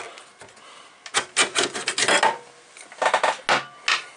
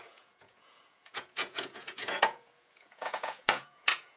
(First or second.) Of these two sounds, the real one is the first